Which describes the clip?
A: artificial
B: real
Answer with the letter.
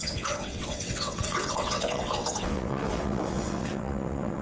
A